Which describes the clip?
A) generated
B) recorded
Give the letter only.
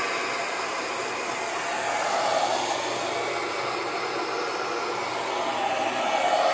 B